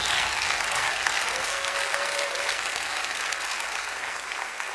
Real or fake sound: fake